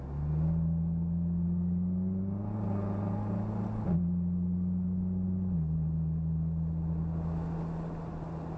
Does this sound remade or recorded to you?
recorded